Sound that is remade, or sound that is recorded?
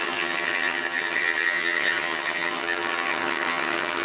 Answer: remade